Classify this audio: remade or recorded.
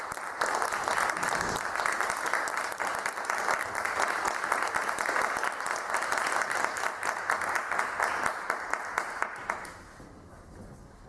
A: recorded